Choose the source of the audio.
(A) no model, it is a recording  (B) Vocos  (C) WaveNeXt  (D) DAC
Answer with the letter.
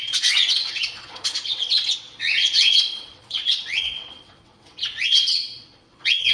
C